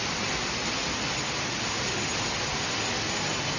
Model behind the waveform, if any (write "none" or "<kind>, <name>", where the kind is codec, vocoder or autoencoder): none